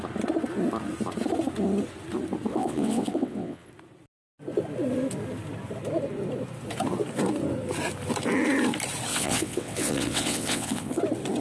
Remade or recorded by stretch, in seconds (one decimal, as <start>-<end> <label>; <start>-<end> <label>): 0.0-2.5 recorded; 2.5-3.7 remade; 3.7-9.1 recorded; 9.1-11.0 remade; 11.0-11.4 recorded